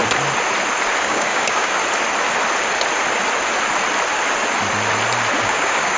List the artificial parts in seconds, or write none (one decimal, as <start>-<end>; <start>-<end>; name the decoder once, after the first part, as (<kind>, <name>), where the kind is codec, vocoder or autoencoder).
1.0-1.8 (codec, DAC); 5.4-6.0